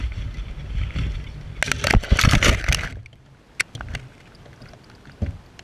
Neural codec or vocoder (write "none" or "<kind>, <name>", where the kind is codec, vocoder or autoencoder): none